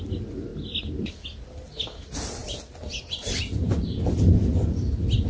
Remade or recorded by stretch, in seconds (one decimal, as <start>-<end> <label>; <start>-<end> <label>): 0.0-5.3 recorded